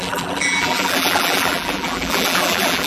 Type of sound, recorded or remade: remade